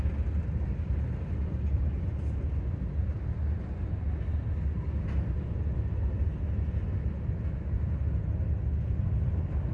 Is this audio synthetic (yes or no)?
no